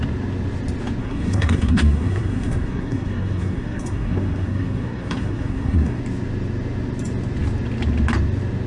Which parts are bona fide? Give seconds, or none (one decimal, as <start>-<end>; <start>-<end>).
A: 0.0-1.0; 6.0-8.7